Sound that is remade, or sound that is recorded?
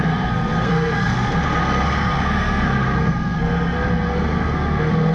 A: remade